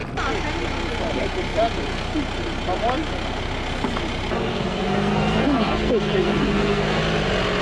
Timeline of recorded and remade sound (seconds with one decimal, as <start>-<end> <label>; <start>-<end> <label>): 0.0-4.5 recorded; 4.5-7.0 remade; 7.0-7.6 recorded